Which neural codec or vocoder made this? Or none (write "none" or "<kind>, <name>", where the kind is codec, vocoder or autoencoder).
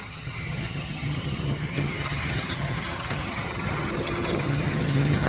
vocoder, HiFi-GAN